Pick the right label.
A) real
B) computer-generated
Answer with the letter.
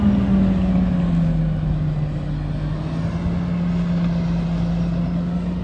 A